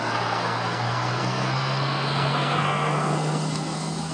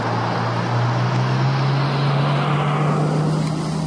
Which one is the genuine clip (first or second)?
second